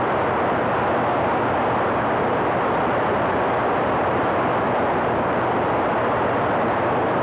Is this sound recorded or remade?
recorded